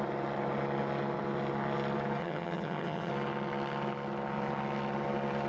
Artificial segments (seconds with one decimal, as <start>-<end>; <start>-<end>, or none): 2.2-3.1

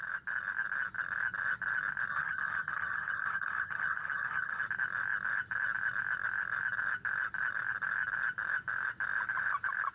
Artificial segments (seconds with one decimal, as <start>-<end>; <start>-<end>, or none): 2.1-4.6

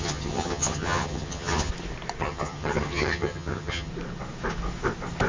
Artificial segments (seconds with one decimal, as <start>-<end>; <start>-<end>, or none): 0.0-1.7; 2.2-3.9

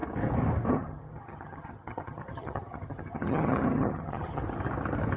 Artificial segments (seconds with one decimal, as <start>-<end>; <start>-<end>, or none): 0.7-4.4

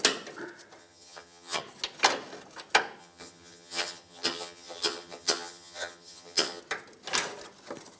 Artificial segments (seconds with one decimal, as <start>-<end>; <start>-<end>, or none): 0.8-1.6; 3.0-6.6